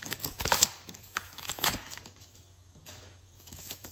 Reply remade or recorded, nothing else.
remade